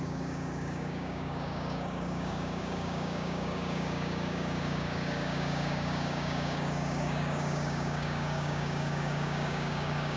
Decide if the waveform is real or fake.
fake